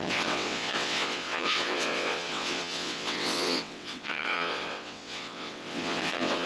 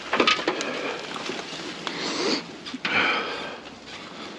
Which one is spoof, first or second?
first